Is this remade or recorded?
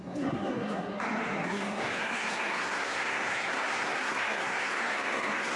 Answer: remade